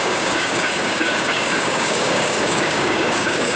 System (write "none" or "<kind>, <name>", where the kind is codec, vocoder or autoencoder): codec, DAC